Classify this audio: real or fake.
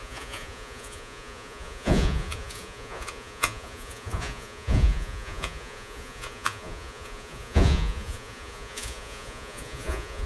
fake